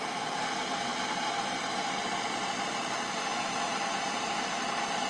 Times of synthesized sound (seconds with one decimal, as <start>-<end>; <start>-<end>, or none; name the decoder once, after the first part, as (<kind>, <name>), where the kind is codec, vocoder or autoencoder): none